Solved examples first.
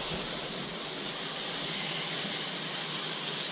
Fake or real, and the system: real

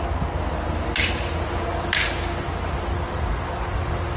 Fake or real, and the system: real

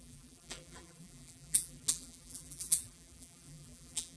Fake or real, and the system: fake, vocoder, BigVGAN v2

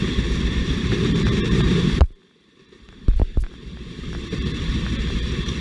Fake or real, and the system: fake, vocoder, BigVGAN v2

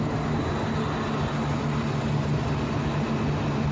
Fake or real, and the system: real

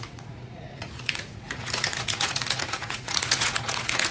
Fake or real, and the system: fake, vocoder, Vocos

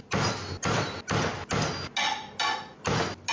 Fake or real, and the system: real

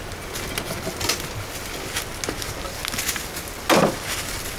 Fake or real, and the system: real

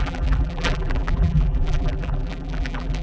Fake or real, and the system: fake, vocoder, BigVGAN v2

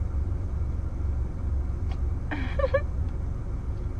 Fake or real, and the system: real